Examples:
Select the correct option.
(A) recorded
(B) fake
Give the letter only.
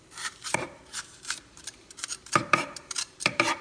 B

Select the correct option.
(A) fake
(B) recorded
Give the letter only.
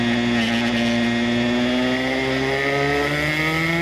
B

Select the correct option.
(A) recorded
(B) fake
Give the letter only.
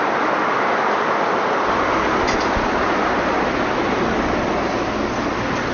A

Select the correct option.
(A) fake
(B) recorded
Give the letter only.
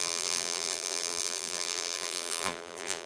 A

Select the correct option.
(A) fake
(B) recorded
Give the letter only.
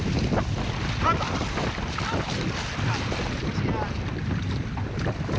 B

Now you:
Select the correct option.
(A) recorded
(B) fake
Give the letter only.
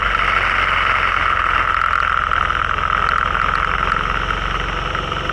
A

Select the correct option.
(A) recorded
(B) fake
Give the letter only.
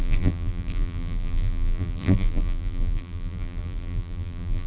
B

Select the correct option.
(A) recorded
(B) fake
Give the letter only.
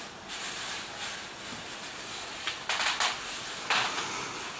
A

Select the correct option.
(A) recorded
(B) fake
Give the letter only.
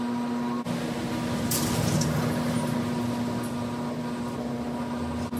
A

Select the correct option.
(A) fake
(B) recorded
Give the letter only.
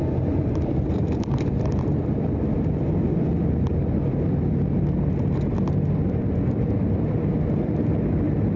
A